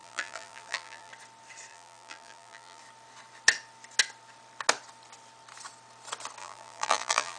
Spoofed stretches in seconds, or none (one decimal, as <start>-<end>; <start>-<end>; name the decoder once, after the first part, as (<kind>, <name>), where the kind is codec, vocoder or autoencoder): 0.0-1.1 (vocoder, BigVGAN v2); 1.7-2.8; 6.4-7.4